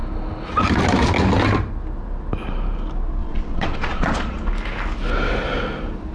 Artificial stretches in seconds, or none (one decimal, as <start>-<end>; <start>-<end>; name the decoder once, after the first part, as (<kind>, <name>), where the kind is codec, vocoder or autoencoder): 3.2-4.5 (vocoder, Vocos)